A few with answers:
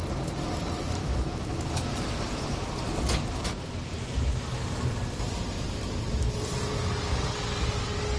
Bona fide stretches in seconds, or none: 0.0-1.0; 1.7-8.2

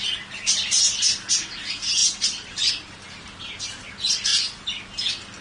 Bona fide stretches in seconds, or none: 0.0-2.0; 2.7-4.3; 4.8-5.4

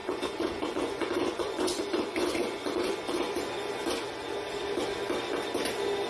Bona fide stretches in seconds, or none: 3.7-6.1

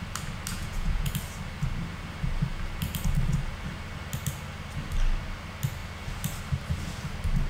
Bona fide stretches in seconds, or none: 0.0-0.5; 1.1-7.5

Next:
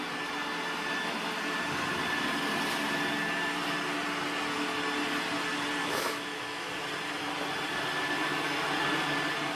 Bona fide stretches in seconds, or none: 0.0-5.8; 6.7-9.6

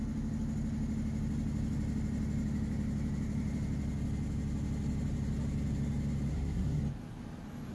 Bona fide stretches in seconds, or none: 0.0-6.3; 6.8-7.7

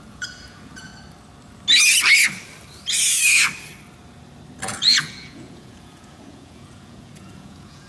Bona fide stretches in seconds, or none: 0.9-4.6